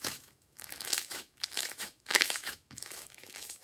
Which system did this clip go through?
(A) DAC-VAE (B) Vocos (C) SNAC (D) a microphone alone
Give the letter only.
A